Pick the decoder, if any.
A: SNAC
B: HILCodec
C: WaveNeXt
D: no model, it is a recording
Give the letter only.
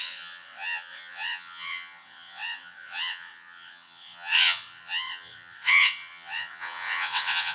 C